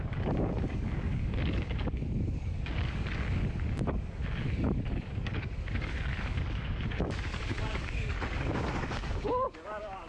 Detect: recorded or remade remade